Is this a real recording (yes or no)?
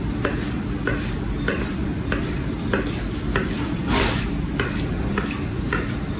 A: no